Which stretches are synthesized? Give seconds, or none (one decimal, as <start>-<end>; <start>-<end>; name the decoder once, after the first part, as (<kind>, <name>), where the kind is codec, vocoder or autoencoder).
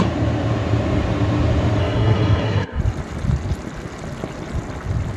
1.8-2.8 (codec, SNAC)